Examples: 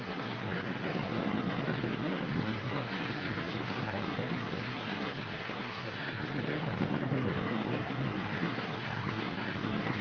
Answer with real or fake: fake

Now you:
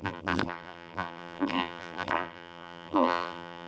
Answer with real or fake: fake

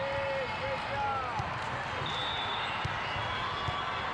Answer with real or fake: real